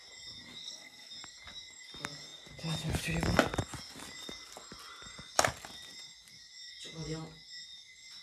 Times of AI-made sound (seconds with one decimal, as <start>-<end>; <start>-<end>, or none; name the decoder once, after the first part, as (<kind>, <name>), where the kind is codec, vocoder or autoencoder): 0.6-1.1 (codec, SNAC)